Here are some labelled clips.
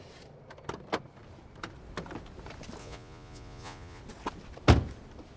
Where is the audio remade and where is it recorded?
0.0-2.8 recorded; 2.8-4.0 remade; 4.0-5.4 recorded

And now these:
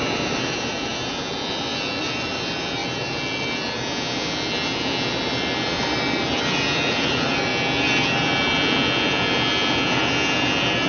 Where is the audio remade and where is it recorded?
0.0-0.9 remade; 0.9-2.0 recorded; 2.0-2.8 remade; 2.8-5.1 recorded; 5.1-7.5 remade; 7.5-10.9 recorded

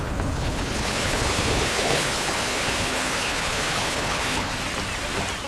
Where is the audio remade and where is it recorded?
0.0-4.5 remade; 4.5-5.5 recorded

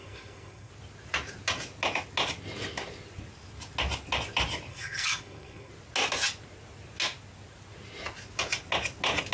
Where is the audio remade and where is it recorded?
0.0-0.7 remade; 0.7-4.7 recorded; 4.7-5.7 remade; 5.7-9.3 recorded

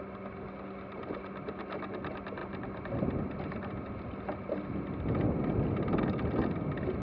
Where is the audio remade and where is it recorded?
0.0-7.0 recorded